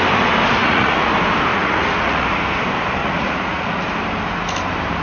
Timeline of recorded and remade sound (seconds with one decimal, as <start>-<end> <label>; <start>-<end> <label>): 0.0-0.6 recorded; 0.6-1.1 remade; 1.1-1.5 recorded; 1.5-2.4 remade; 2.4-3.0 recorded; 3.0-3.8 remade; 3.8-5.0 recorded